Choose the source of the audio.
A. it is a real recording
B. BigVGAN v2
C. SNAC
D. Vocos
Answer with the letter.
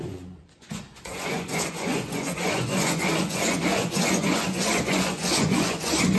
D